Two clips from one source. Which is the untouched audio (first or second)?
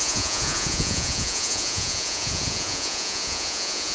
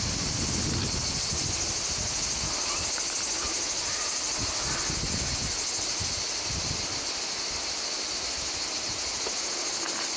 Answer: second